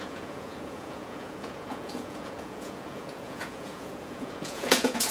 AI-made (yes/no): yes